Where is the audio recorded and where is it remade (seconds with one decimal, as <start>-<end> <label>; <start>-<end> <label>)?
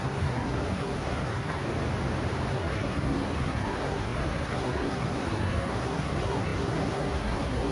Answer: 0.0-1.6 remade; 1.6-2.5 recorded; 2.5-7.7 remade